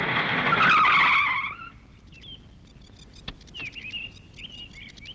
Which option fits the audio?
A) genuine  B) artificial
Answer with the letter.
A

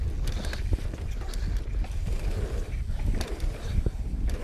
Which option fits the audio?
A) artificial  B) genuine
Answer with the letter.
B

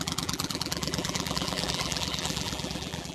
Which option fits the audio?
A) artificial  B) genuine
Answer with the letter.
A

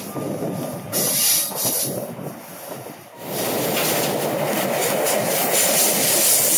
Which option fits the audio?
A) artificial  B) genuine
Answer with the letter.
B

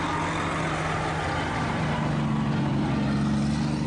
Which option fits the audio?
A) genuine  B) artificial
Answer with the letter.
A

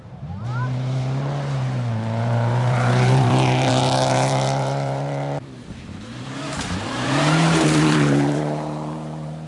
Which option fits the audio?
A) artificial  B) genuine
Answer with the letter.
A